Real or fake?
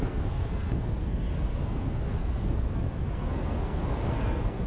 fake